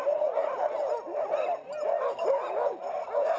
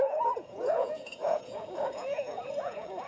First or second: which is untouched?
first